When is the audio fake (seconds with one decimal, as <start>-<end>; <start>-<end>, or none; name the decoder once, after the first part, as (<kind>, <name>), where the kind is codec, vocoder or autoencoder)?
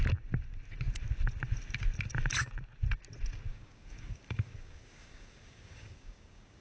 3.5-6.6 (codec, DAC)